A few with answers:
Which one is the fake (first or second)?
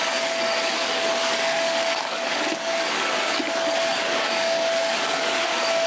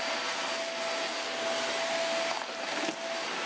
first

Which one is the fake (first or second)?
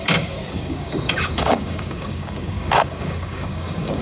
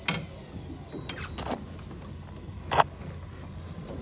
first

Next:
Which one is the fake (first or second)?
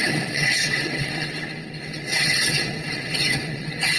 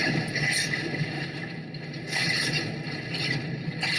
first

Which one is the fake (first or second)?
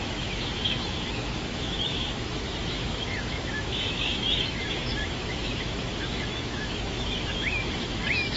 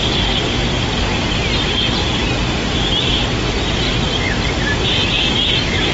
first